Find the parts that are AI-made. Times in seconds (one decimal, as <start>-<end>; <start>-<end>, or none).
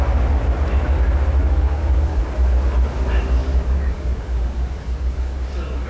1.4-2.2; 3.4-5.9